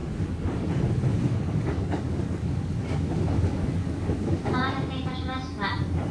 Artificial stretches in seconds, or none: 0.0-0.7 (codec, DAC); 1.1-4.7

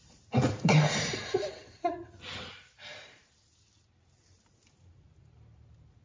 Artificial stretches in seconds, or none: 0.0-1.6 (vocoder, BigVGAN v2); 5.2-6.0

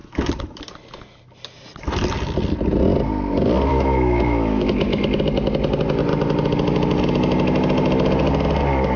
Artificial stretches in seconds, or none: 0.0-0.6 (autoencoder, DAC-VAE); 3.7-5.0